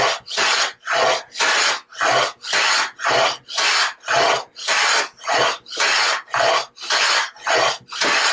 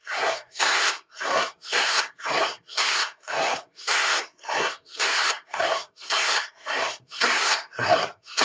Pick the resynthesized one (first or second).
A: second